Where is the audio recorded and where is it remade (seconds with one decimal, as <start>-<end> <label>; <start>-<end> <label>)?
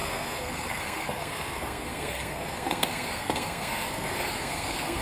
0.0-5.0 remade